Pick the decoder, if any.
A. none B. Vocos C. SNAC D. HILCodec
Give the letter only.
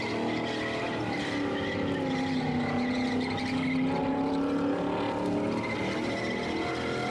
A